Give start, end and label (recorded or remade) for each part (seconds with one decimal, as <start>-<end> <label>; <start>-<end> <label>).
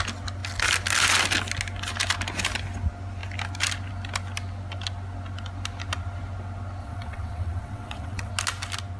0.0-6.8 recorded; 6.8-8.3 remade; 8.3-9.0 recorded